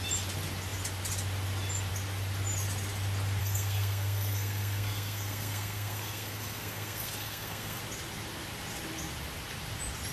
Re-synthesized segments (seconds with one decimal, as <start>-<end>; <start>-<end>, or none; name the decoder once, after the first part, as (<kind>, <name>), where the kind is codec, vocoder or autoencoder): 3.4-7.8 (codec, SNAC)